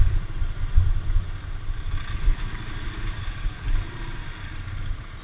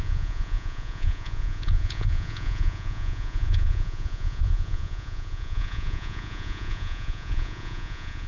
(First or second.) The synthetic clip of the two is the second